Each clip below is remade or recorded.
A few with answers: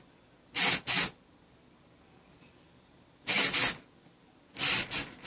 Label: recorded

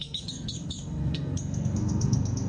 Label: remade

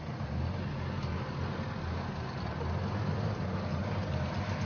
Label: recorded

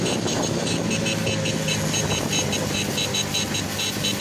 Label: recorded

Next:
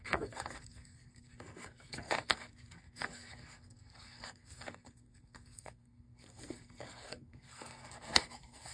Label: remade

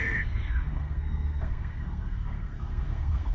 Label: remade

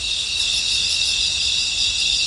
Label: recorded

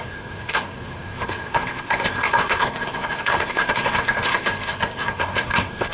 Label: remade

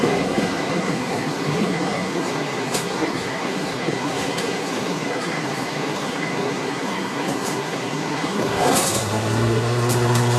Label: remade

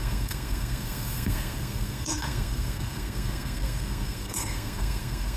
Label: remade